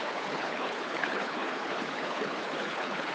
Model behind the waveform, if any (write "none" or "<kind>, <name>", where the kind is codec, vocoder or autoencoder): codec, HILCodec